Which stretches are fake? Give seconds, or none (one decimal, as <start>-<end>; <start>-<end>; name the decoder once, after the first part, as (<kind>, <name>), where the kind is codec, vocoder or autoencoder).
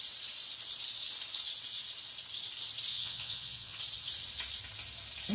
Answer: 2.9-3.8 (vocoder, Vocos)